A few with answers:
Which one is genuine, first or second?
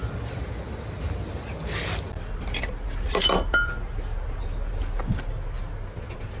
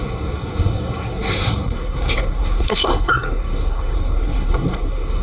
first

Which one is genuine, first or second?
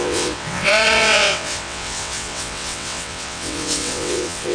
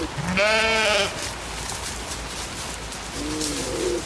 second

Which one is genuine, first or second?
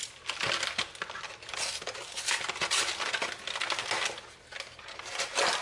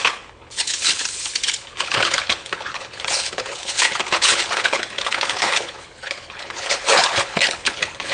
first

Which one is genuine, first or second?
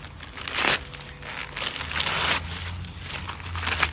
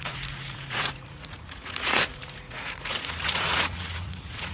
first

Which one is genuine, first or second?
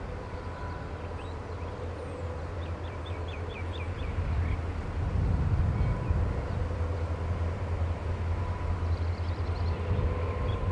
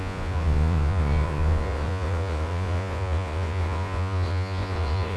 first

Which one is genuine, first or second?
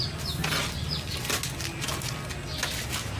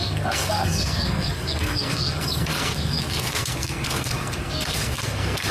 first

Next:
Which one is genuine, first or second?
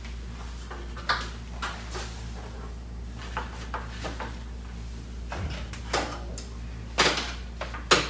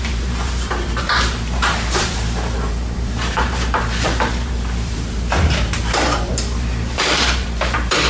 first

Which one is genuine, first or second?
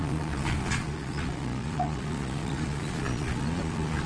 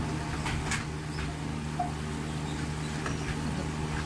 second